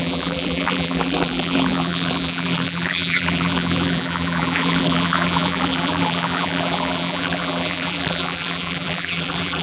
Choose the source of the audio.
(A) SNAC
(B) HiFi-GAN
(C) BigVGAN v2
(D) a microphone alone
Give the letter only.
C